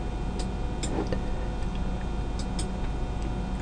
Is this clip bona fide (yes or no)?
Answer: yes